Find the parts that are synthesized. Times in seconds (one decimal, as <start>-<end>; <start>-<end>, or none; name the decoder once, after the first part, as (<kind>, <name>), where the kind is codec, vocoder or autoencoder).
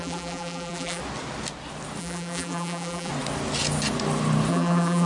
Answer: 0.0-1.0 (vocoder, BigVGAN v2); 2.0-3.1; 4.5-5.1